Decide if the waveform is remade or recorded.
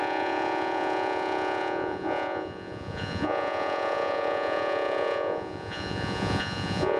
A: remade